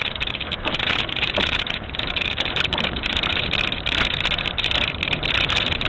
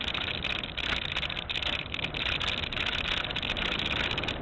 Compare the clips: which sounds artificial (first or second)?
first